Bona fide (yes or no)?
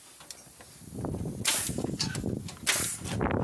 yes